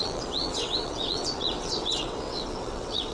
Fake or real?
fake